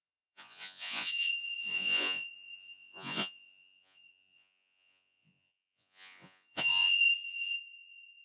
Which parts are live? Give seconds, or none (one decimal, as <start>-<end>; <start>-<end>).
none